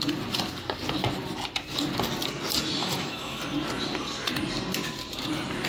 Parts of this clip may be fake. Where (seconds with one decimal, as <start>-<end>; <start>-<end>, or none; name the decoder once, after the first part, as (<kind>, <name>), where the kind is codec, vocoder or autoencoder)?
2.8-3.4 (autoencoder, DAC-VAE)

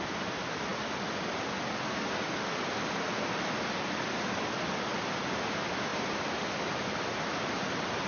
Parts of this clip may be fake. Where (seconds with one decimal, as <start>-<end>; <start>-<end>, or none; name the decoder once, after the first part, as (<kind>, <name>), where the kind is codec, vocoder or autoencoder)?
none

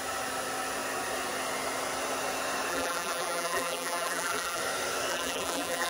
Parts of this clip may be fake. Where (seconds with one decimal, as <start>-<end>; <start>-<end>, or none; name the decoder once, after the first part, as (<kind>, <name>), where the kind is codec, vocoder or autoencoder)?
2.7-4.6 (vocoder, BigVGAN v2); 5.1-5.9

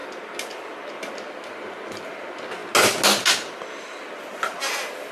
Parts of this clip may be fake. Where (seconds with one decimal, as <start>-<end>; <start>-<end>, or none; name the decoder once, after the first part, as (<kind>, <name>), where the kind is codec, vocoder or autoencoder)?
1.1-2.6 (vocoder, BigVGAN v2); 4.0-5.1

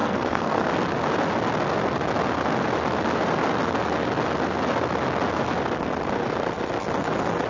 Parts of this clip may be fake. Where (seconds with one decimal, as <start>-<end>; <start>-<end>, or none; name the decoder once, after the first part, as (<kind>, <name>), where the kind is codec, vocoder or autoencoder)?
0.0-0.7 (codec, SNAC)

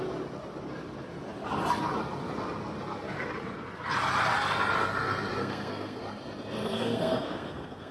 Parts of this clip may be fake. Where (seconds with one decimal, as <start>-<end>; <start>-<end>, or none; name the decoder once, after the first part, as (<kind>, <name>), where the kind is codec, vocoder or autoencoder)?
5.4-6.0 (codec, SNAC); 6.6-7.9